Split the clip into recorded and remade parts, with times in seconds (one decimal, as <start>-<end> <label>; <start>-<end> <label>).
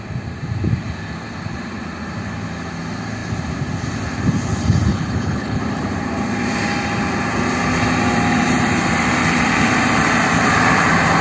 0.0-4.9 recorded; 4.9-5.6 remade; 5.6-11.2 recorded